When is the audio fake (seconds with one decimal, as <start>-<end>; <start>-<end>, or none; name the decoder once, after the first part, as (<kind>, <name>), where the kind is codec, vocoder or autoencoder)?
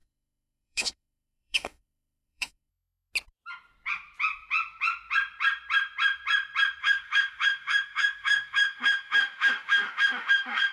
0.0-2.7 (autoencoder, DAC-VAE); 6.8-10.7